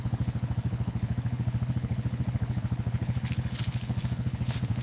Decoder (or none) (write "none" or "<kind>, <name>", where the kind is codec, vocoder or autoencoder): codec, HILCodec